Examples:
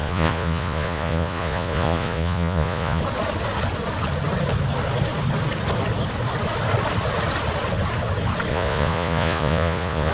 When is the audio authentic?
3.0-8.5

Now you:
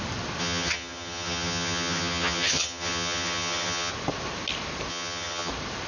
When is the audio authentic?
0.0-0.4; 3.9-4.9; 5.5-5.9

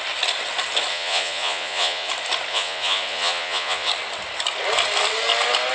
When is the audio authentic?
0.0-0.9; 2.1-2.5; 3.9-5.7

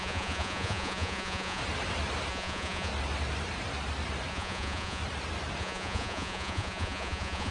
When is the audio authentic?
1.6-2.3; 2.9-4.3; 5.0-5.6

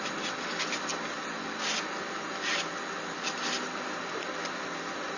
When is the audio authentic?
0.0-5.2